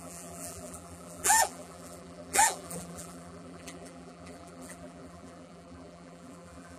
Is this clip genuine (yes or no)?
no